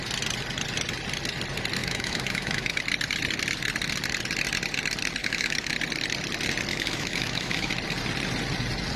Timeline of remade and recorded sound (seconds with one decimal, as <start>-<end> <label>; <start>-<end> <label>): 0.0-1.8 recorded; 1.8-2.8 remade; 2.8-5.2 recorded; 5.2-5.7 remade; 5.7-6.7 recorded; 6.7-7.7 remade; 7.7-9.0 recorded